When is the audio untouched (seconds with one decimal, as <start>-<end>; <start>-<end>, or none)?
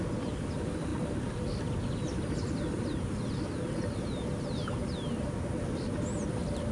0.0-6.7